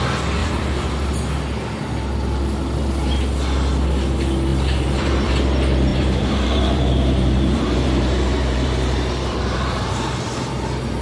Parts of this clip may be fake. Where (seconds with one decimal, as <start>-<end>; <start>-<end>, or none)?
0.4-1.1; 4.5-5.3; 5.9-10.5